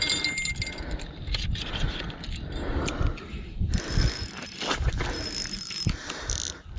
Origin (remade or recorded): recorded